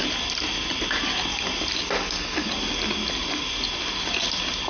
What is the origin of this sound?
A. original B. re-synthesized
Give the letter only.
A